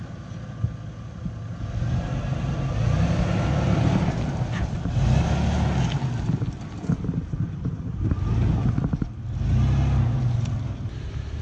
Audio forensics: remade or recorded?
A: recorded